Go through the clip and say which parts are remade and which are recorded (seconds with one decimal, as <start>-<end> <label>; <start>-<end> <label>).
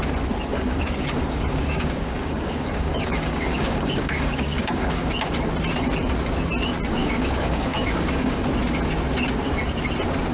0.0-0.5 recorded; 0.5-5.1 remade; 5.1-7.0 recorded; 7.0-8.4 remade; 8.4-10.3 recorded